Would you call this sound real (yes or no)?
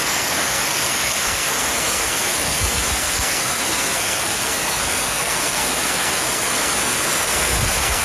no